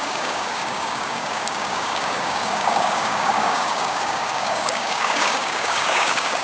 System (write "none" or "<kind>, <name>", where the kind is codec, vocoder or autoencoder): codec, DAC